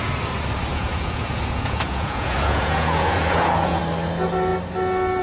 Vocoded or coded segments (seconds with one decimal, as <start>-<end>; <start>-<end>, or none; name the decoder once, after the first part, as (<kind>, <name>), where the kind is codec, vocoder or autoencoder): 0.7-3.8 (vocoder, Vocos)